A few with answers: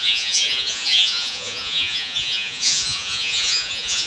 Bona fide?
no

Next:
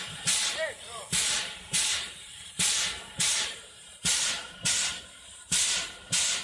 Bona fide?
no